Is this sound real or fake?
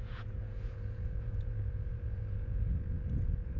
fake